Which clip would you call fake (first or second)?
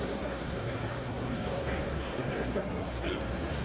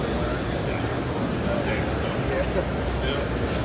first